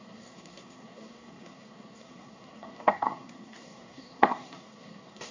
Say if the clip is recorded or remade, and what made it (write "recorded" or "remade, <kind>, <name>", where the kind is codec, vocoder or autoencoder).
remade, codec, SNAC